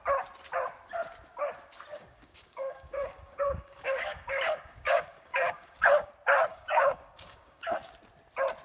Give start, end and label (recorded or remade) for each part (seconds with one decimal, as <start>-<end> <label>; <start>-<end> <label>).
0.0-1.9 recorded; 1.9-6.1 remade; 6.1-6.5 recorded; 6.5-7.9 remade; 7.9-8.6 recorded